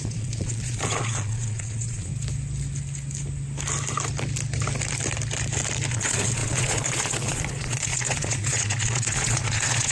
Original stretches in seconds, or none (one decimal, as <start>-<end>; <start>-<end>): 2.1-5.9